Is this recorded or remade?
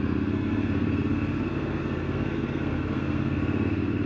remade